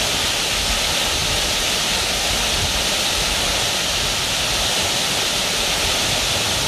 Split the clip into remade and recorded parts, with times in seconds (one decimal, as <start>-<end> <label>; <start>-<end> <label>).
0.0-6.7 recorded

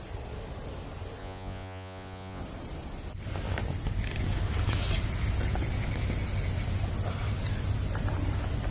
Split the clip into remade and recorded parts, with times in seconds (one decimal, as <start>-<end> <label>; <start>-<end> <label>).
0.0-1.2 recorded; 1.2-2.4 remade; 2.4-8.7 recorded